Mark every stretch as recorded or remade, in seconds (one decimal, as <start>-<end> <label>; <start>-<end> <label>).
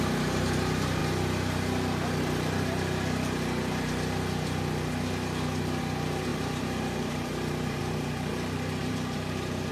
0.0-1.0 remade; 1.0-5.8 recorded; 5.8-8.3 remade; 8.3-8.8 recorded; 8.8-9.7 remade